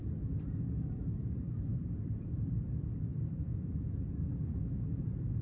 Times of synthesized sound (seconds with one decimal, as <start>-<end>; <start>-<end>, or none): 0.0-5.4